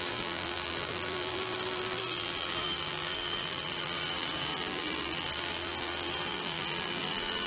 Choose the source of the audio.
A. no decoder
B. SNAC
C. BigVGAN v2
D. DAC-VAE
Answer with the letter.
C